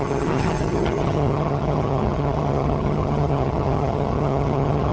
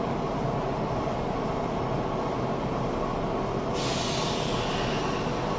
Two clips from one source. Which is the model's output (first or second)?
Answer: first